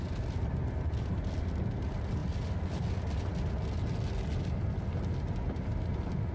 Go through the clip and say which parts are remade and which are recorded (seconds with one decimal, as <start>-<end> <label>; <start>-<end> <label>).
0.0-6.3 recorded